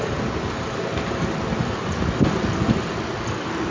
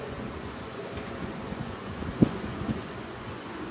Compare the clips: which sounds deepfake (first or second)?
second